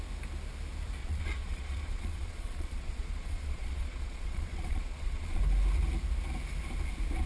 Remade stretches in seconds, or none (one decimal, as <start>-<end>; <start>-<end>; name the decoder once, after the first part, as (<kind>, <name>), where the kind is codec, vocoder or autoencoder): 1.0-5.4 (vocoder, Vocos)